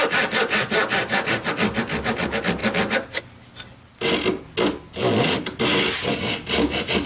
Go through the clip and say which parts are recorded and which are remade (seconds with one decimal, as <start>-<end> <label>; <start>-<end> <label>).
0.0-7.1 recorded